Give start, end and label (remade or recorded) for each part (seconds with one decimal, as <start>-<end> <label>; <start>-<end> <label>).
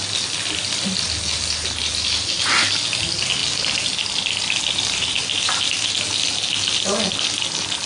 0.0-7.9 recorded